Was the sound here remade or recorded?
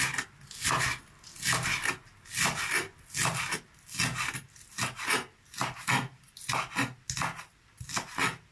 recorded